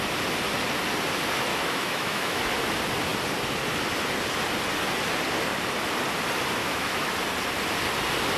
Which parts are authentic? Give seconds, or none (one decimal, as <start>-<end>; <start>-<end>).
0.0-1.5; 2.5-6.6; 7.1-8.4